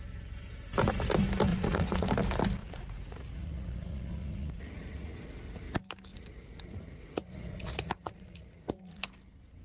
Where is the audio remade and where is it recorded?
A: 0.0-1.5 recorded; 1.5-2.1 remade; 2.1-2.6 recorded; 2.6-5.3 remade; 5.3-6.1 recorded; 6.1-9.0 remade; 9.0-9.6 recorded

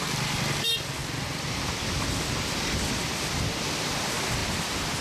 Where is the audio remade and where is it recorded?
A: 0.0-5.0 recorded

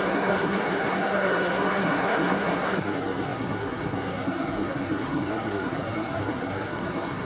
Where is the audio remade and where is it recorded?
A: 0.0-7.3 remade

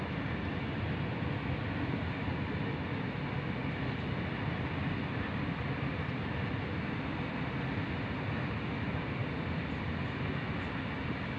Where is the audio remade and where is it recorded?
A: 0.0-11.4 recorded